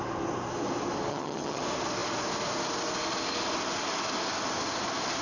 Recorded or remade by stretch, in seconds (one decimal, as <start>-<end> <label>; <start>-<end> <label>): 0.0-1.1 recorded; 1.1-1.6 remade; 1.6-5.2 recorded